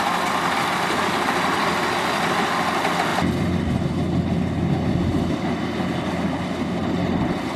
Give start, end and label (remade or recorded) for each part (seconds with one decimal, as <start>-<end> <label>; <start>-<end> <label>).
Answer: 0.0-7.6 recorded